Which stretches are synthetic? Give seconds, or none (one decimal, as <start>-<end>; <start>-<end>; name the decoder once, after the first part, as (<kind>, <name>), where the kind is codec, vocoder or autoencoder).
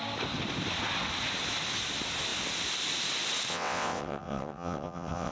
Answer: 3.5-5.3 (vocoder, WaveNeXt)